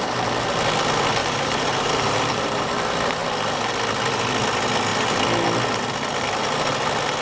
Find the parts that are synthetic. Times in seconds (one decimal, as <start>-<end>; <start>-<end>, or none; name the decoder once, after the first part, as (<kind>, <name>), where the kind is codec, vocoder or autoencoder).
1.2-2.7 (vocoder, BigVGAN v2)